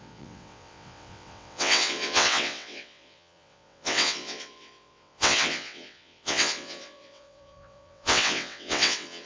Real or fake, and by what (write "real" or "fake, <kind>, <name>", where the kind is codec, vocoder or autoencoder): fake, vocoder, WaveNeXt